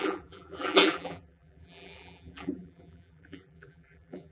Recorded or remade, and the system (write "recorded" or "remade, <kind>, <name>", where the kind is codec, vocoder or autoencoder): remade, vocoder, BigVGAN v2